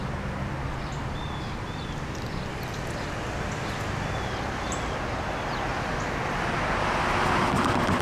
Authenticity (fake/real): real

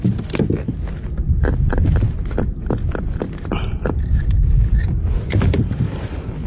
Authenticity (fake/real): real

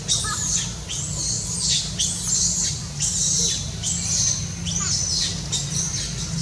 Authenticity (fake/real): real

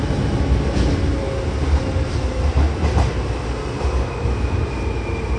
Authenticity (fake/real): real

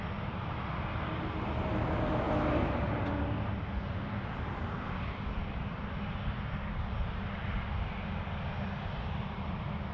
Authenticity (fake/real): real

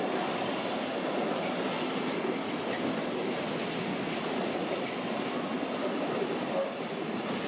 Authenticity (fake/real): real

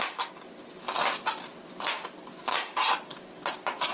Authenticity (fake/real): real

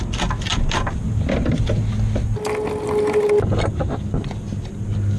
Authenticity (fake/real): real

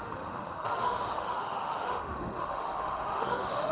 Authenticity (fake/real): fake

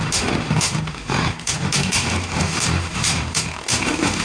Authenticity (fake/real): fake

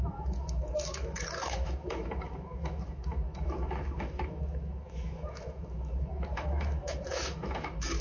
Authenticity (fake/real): fake